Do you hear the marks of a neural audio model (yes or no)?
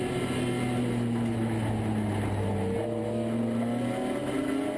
no